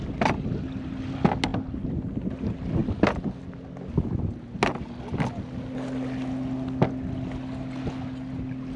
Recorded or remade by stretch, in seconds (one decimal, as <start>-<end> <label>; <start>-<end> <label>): 0.0-8.8 recorded